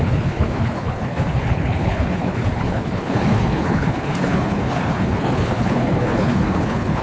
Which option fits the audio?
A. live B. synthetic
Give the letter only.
B